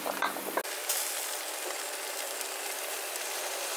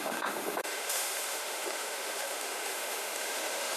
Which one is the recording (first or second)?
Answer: first